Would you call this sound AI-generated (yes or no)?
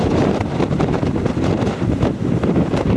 yes